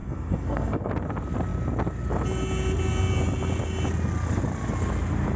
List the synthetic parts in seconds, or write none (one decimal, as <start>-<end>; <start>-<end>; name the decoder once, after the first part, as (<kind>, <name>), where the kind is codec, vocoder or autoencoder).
0.0-0.9 (codec, SNAC)